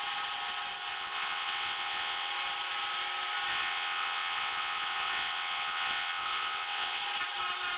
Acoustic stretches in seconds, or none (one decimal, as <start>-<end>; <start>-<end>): 0.0-0.9; 2.3-3.5; 7.0-7.8